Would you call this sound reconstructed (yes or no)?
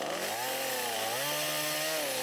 no